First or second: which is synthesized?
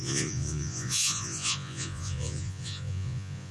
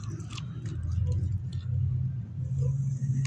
first